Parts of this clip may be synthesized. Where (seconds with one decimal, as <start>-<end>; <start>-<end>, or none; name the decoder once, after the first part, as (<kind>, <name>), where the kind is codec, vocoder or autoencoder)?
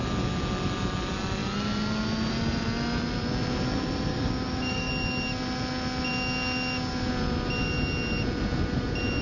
4.1-4.9 (codec, DAC)